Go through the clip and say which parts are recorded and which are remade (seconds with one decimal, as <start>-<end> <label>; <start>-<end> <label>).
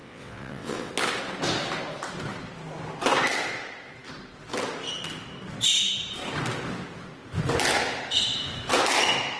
0.0-0.9 remade; 0.9-9.4 recorded